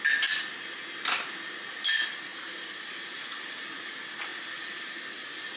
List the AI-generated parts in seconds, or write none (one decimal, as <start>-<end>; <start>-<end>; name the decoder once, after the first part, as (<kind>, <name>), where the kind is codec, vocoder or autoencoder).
2.3-3.6 (vocoder, BigVGAN v2); 4.3-5.6